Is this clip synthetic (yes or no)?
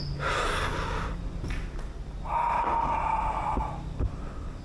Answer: no